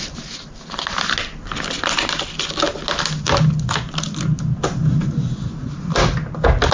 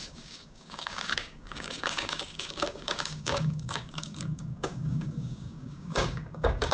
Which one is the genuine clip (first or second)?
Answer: first